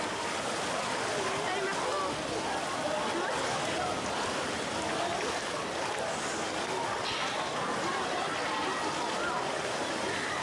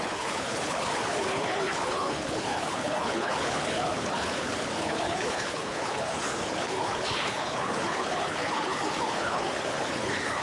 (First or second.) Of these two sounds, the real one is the first